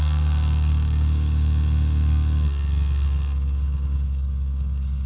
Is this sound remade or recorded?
remade